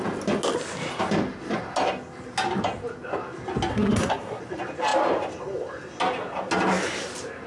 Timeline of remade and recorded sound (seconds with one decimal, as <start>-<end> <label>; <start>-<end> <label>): 0.0-3.7 recorded; 3.7-4.4 remade; 4.4-7.5 recorded

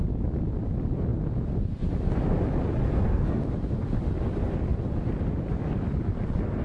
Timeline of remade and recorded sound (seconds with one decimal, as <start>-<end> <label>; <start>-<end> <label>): 0.0-2.8 recorded; 2.8-3.4 remade; 3.4-6.6 recorded